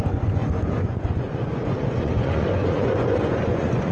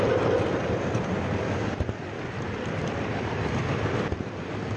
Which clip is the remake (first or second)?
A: first